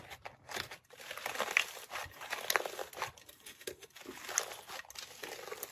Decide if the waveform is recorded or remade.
recorded